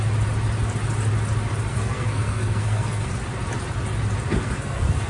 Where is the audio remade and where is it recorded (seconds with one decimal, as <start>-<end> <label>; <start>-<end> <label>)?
0.0-1.7 recorded; 1.7-3.1 remade; 3.1-4.3 recorded; 4.3-5.1 remade